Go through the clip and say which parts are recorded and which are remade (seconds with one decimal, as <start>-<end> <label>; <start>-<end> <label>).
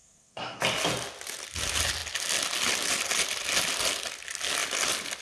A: 0.0-0.6 remade; 0.6-5.2 recorded